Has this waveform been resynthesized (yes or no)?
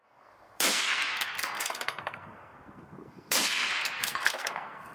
yes